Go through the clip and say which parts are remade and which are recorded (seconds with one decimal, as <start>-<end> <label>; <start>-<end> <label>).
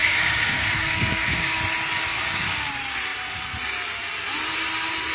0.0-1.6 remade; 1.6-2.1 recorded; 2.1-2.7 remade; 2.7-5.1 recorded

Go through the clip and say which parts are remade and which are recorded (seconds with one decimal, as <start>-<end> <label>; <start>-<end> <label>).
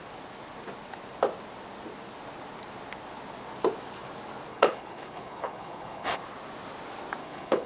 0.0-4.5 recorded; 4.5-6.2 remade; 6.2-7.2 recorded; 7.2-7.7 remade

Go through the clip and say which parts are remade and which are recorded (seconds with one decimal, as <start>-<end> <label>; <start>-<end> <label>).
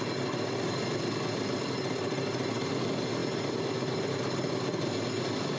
0.0-5.6 recorded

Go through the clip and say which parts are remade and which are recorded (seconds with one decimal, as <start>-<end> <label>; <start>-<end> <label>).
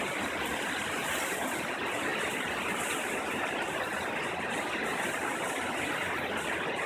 0.0-6.9 recorded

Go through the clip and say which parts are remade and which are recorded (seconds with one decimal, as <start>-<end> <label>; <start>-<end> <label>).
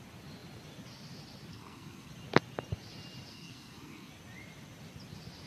0.0-1.5 recorded; 1.5-2.1 remade; 2.1-3.3 recorded; 3.3-4.1 remade; 4.1-5.5 recorded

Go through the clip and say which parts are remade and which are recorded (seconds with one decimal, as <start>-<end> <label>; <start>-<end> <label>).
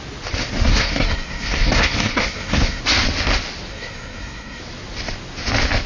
0.0-0.7 recorded; 0.7-2.8 remade; 2.8-3.7 recorded; 3.7-4.6 remade; 4.6-5.9 recorded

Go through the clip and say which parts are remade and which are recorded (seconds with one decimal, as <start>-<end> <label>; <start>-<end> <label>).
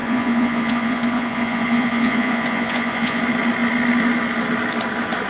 0.0-3.2 remade; 3.2-5.3 recorded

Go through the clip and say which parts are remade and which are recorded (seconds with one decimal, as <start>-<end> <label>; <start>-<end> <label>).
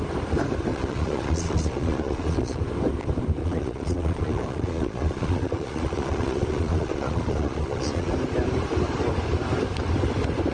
0.0-0.7 recorded; 0.7-2.6 remade; 2.6-3.4 recorded; 3.4-8.1 remade; 8.1-10.5 recorded